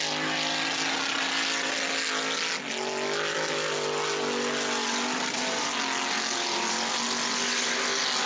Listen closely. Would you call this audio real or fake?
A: real